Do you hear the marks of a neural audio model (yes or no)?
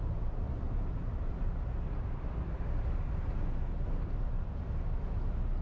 no